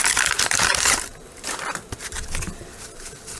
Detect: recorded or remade recorded